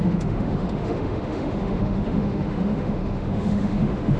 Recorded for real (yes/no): no